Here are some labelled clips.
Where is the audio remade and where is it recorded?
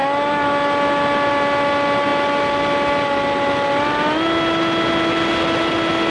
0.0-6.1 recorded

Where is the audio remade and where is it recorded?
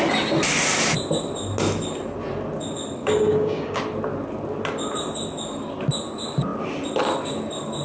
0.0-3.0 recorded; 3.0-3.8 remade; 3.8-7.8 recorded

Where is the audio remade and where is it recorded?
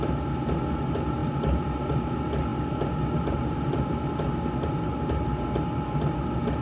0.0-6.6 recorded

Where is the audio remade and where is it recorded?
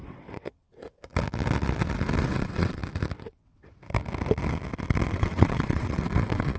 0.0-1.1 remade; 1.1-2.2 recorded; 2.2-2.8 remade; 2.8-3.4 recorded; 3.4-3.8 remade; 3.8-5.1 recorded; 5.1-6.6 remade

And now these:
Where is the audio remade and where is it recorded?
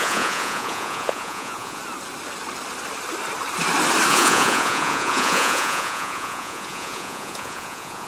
0.0-1.8 remade; 1.8-4.1 recorded; 4.1-8.1 remade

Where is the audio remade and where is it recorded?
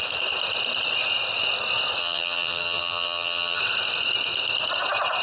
0.0-2.0 recorded; 2.0-3.6 remade; 3.6-5.2 recorded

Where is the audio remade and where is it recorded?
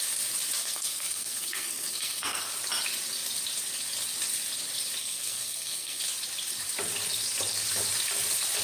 0.0-0.6 recorded; 0.6-2.5 remade; 2.5-5.0 recorded; 5.0-6.0 remade; 6.0-8.6 recorded